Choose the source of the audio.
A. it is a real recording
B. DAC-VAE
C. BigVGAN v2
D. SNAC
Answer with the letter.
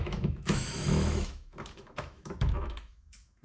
B